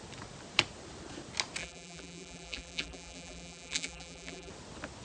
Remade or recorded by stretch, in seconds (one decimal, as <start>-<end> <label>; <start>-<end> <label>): 0.0-1.6 recorded; 1.6-4.5 remade; 4.5-5.0 recorded

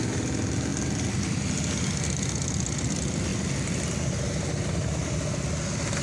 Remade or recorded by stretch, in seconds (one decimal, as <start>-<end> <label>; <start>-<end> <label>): 0.0-6.0 recorded

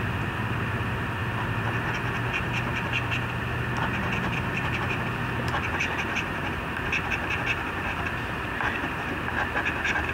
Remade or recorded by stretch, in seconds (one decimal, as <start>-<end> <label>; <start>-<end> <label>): 0.0-1.2 remade; 1.2-4.2 recorded; 4.2-10.1 remade

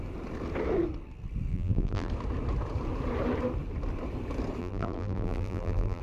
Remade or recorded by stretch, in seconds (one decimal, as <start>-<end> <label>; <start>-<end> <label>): 0.0-1.5 recorded; 1.5-2.1 remade; 2.1-4.6 recorded; 4.6-6.0 remade

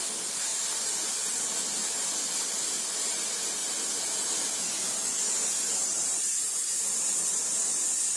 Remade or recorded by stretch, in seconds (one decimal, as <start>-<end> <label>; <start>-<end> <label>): 0.0-0.5 recorded; 0.5-1.4 remade; 1.4-5.9 recorded; 5.9-7.5 remade; 7.5-8.2 recorded